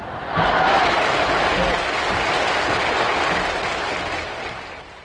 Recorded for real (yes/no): yes